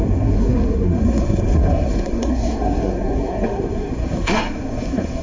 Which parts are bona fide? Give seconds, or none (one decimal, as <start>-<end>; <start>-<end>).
none